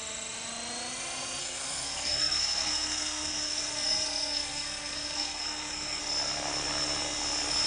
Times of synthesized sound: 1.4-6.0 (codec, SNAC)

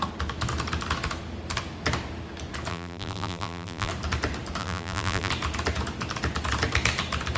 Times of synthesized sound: 2.7-3.9 (vocoder, BigVGAN v2); 4.6-5.3

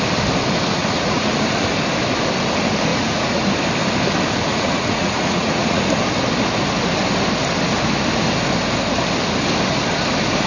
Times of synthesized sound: 0.8-1.3 (vocoder, Vocos); 2.9-3.5; 4.5-5.8

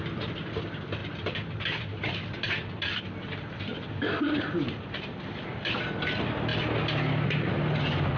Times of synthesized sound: 1.0-3.0 (vocoder, BigVGAN v2); 3.7-5.7

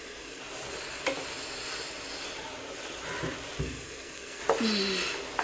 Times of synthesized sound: 0.0-0.4 (codec, SNAC); 3.6-4.4

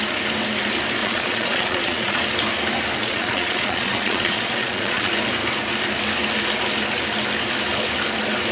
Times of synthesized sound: 1.0-2.2 (vocoder, Vocos); 3.0-5.1

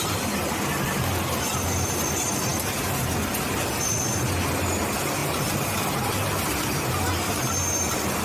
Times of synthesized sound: none

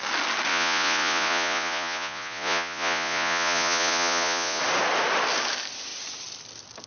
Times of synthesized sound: 0.5-4.6 (vocoder, Vocos)